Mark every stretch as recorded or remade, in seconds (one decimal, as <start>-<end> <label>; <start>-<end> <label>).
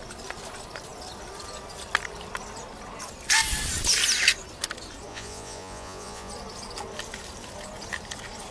0.0-5.1 recorded; 5.1-6.3 remade; 6.3-8.5 recorded